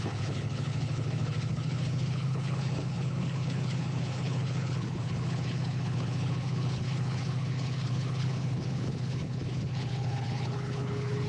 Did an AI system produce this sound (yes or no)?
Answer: yes